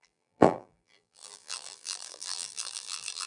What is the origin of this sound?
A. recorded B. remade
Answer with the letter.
B